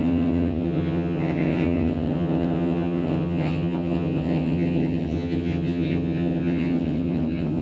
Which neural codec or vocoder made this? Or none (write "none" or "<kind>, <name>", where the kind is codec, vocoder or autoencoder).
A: vocoder, HiFi-GAN